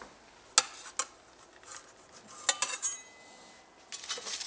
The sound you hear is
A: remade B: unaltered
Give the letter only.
B